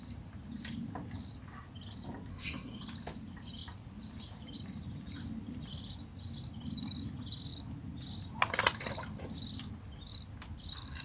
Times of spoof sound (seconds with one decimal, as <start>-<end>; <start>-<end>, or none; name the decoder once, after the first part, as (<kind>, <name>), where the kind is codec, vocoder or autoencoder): 2.3-2.8 (codec, SNAC)